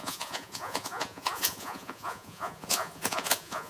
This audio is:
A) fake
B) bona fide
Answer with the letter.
A